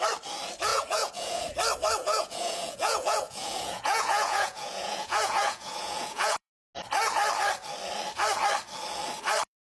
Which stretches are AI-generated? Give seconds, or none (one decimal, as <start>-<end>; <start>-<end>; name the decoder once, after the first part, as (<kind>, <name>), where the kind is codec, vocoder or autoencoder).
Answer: 0.7-1.4 (vocoder, Vocos); 2.0-6.5